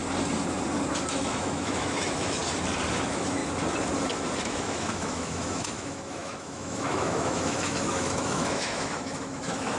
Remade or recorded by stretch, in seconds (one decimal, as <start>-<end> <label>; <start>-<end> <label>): 0.0-1.1 recorded; 1.1-2.4 remade; 2.4-3.0 recorded; 3.0-3.4 remade; 3.4-4.4 recorded; 4.4-9.8 remade